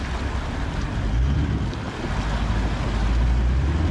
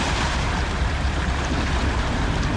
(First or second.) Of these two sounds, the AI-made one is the second